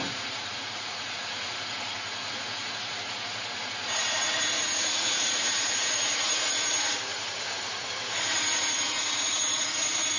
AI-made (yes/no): yes